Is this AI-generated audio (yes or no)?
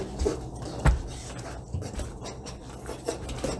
no